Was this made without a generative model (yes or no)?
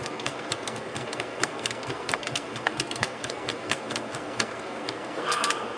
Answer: no